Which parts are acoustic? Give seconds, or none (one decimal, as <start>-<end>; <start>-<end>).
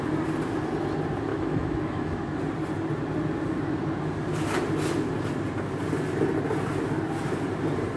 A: 0.0-1.3; 2.4-8.0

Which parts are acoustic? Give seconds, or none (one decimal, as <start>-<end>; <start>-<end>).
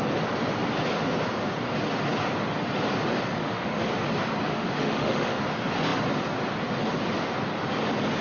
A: 0.0-3.4; 3.9-4.5; 5.4-8.2